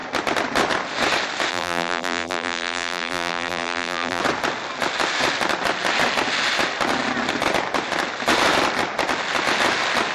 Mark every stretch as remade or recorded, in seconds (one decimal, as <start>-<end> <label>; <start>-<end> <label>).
0.0-1.5 recorded; 1.5-4.2 remade; 4.2-10.1 recorded